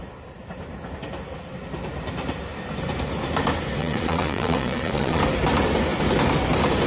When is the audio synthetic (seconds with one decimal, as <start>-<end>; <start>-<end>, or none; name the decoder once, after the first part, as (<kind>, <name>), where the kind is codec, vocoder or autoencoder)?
3.8-5.2 (vocoder, Vocos)